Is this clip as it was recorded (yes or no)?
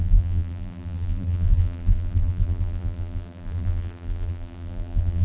no